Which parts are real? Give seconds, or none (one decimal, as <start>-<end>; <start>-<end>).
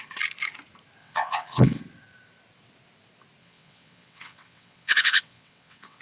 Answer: 0.0-1.0; 1.8-3.4